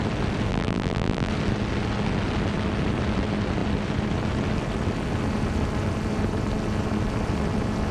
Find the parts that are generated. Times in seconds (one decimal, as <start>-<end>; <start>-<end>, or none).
0.5-1.3